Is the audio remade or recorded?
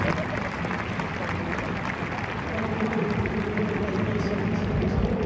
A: recorded